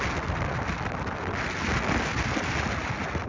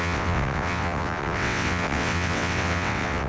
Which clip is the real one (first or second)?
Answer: first